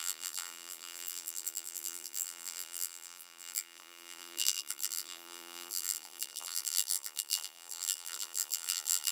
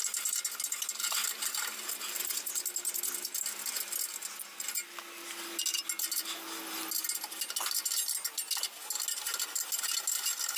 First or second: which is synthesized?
first